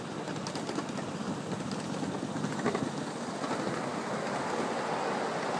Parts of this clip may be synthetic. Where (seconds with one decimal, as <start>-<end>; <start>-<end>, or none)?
none